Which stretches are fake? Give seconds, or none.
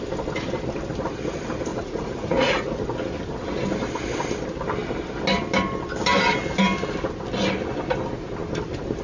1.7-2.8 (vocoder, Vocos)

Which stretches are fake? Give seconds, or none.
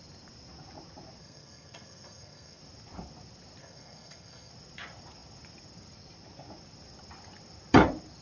1.2-2.6 (codec, SNAC); 3.6-4.5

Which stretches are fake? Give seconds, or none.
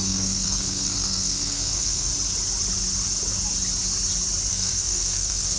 0.0-2.1 (codec, SNAC); 4.5-5.6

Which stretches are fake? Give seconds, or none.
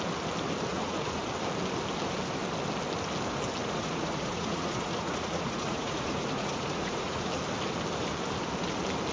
0.7-1.2 (vocoder, Vocos); 3.6-7.3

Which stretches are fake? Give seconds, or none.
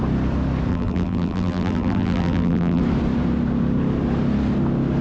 0.7-2.8 (vocoder, BigVGAN v2)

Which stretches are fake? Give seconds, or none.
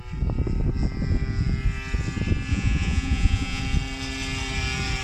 2.5-3.6 (vocoder, Vocos)